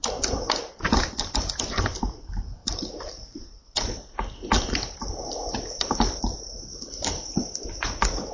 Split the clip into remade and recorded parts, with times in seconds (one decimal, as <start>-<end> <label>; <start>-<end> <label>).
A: 0.0-2.6 recorded; 2.6-3.6 remade; 3.6-8.3 recorded